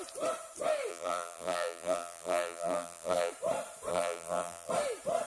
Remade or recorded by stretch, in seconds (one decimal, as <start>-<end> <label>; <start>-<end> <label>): 0.0-0.9 recorded; 0.9-3.3 remade; 3.3-3.9 recorded; 3.9-4.7 remade; 4.7-5.3 recorded

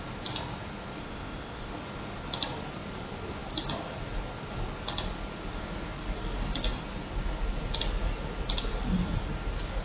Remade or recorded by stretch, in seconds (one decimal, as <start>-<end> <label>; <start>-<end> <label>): 0.0-1.0 recorded; 1.0-1.7 remade; 1.7-9.8 recorded

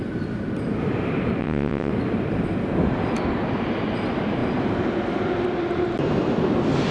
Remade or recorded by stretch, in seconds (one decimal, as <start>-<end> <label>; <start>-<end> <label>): 0.0-1.4 recorded; 1.4-1.9 remade; 1.9-6.9 recorded

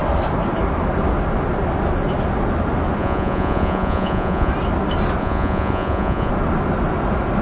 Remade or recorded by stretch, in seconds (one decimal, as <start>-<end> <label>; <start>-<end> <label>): 0.0-3.0 recorded; 3.0-4.5 remade; 4.5-5.2 recorded; 5.2-6.3 remade; 6.3-7.4 recorded

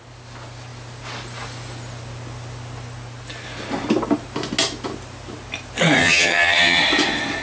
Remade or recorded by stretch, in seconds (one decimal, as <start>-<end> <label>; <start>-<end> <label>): 0.0-6.0 recorded; 6.0-6.8 remade; 6.8-7.4 recorded

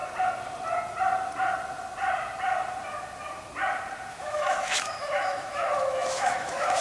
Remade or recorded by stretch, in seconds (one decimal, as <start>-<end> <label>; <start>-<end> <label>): 0.0-4.1 recorded; 4.1-6.8 remade